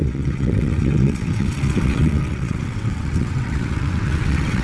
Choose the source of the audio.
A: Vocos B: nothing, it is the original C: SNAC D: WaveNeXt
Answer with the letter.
D